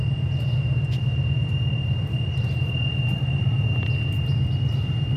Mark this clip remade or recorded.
remade